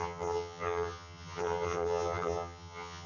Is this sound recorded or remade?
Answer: remade